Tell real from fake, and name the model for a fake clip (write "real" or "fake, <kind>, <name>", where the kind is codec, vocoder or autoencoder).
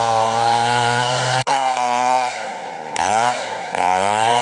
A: fake, codec, SNAC